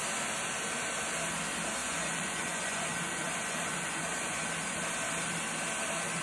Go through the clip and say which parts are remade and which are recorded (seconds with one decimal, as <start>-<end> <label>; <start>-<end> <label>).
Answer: 0.0-1.8 recorded; 1.8-4.4 remade; 4.4-6.2 recorded